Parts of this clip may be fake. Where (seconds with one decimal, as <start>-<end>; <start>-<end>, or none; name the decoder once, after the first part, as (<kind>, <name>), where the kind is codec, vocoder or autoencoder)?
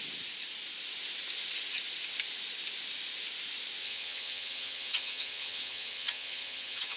3.8-7.0 (vocoder, HiFi-GAN)